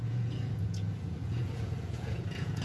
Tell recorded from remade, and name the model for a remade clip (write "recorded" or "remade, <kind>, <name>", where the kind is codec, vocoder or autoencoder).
remade, vocoder, Vocos